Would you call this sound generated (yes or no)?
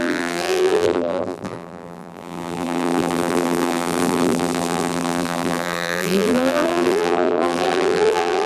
yes